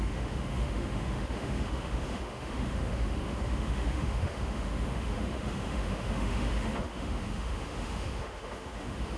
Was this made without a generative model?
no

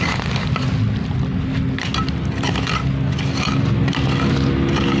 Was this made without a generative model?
yes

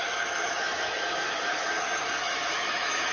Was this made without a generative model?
no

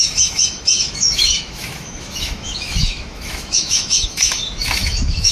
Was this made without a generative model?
no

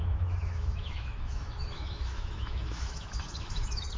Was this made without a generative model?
no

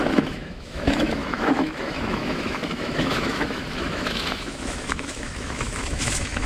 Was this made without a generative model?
no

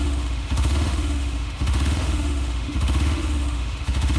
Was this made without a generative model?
no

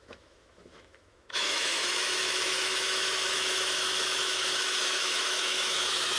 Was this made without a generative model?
no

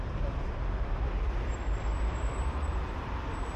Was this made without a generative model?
yes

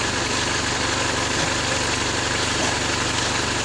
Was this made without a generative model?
yes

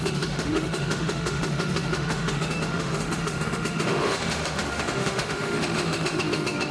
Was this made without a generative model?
no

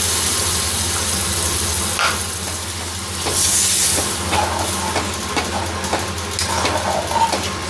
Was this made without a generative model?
yes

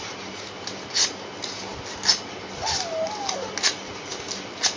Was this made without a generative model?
yes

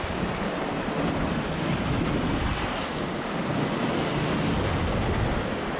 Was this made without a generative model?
yes